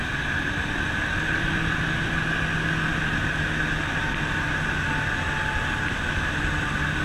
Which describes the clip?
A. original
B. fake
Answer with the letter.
A